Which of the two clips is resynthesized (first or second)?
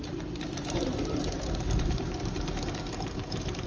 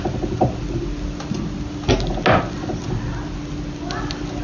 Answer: first